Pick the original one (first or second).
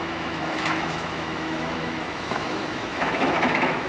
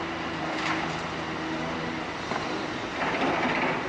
second